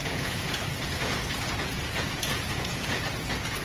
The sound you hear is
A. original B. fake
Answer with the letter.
B